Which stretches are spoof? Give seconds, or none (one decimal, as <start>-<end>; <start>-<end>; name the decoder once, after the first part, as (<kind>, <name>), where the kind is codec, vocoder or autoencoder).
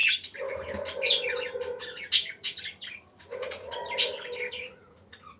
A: 3.2-3.8 (vocoder, Vocos); 4.5-5.4